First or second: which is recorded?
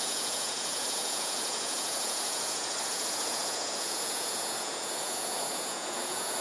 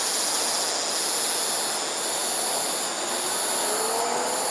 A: second